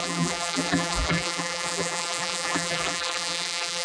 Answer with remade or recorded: remade